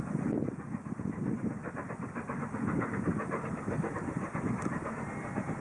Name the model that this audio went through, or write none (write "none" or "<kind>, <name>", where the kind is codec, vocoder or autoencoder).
none